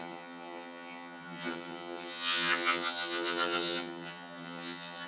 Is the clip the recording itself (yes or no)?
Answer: no